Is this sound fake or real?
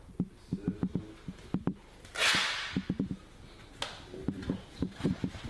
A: real